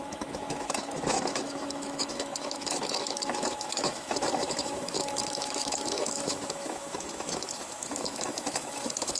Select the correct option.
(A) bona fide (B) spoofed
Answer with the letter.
B